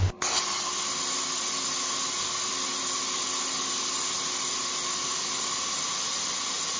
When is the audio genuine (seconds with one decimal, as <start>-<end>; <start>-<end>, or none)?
0.0-6.8